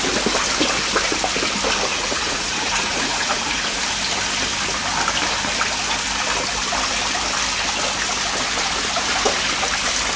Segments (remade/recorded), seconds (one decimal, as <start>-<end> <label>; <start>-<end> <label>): 0.0-1.9 recorded; 1.9-3.8 remade; 3.8-10.2 recorded

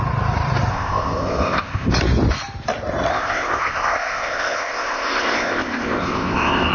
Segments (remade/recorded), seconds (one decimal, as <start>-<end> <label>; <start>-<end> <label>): 0.0-0.7 recorded; 0.7-1.9 remade; 1.9-3.1 recorded; 3.1-6.7 remade

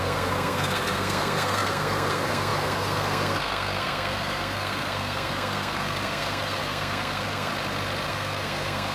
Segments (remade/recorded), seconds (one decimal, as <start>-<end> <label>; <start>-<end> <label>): 0.0-7.5 remade; 7.5-8.1 recorded; 8.1-8.9 remade

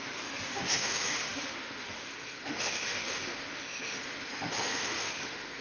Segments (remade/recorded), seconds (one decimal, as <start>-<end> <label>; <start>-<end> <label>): 0.0-5.6 remade

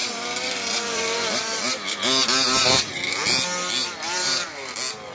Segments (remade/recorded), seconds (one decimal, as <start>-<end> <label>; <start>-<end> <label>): 0.0-2.9 remade; 2.9-3.8 recorded; 3.8-4.5 remade; 4.5-5.1 recorded

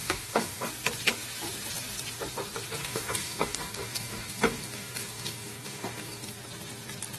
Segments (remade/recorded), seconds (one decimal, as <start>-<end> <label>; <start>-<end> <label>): 0.0-0.7 remade; 0.7-2.8 recorded; 2.8-6.3 remade; 6.3-7.2 recorded

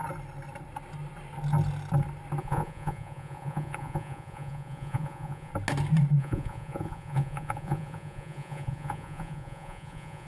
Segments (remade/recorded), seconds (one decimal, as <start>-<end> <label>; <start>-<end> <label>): 0.0-2.4 recorded; 2.4-5.5 remade; 5.5-6.2 recorded; 6.2-10.3 remade

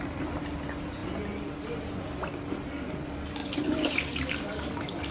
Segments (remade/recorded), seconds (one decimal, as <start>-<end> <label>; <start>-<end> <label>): 0.0-3.4 recorded; 3.4-5.1 remade